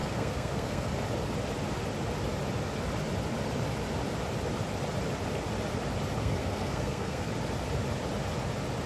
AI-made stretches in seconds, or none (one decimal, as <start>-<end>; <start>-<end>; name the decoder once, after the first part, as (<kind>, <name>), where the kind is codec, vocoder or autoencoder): 0.0-1.0 (codec, SNAC); 6.2-7.3

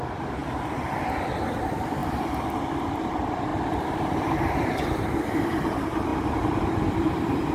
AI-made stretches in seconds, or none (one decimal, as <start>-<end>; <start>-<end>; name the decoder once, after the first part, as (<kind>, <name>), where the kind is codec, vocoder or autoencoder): 0.0-0.4 (vocoder, BigVGAN v2); 1.2-2.0; 2.8-3.5; 4.4-7.5

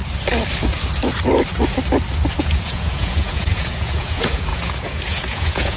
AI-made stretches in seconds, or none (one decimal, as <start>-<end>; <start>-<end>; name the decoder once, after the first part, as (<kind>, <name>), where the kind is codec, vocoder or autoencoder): 2.4-5.8 (vocoder, Vocos)

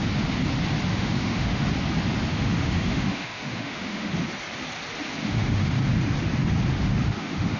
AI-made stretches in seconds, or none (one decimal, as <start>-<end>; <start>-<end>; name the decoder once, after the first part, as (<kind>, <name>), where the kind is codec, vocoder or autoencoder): 0.9-1.6 (autoencoder, DAC-VAE); 2.3-4.1; 5.2-5.7; 6.7-7.6